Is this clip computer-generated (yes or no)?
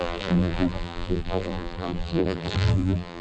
yes